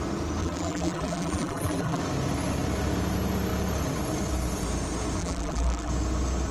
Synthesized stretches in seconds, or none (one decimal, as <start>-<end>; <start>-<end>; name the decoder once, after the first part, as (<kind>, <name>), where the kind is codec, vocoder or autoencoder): 0.4-2.0 (vocoder, BigVGAN v2); 5.2-5.9